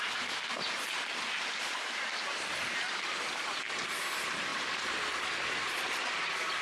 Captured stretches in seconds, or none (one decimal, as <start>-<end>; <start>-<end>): 0.0-6.6